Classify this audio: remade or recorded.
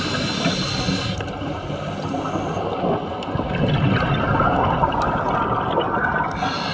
recorded